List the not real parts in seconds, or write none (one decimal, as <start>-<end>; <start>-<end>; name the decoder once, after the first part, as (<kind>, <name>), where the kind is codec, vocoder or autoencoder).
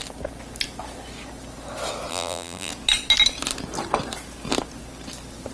2.1-2.7 (vocoder, BigVGAN v2)